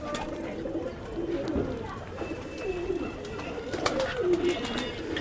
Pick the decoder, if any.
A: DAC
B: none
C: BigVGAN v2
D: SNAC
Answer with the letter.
B